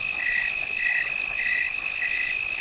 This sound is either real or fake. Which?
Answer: fake